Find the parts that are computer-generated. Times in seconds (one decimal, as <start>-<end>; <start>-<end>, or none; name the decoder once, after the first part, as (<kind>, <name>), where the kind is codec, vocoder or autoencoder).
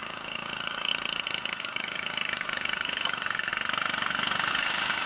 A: 0.0-0.9 (codec, DAC); 1.6-3.5; 4.5-5.1